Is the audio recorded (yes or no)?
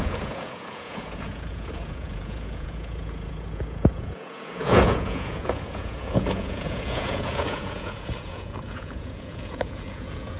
no